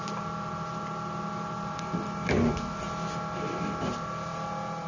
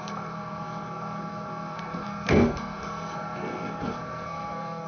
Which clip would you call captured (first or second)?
first